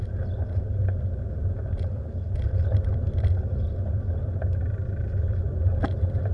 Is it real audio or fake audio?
real